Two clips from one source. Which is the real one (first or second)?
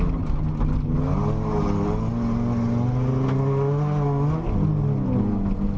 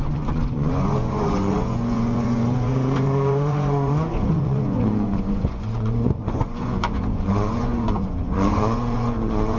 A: first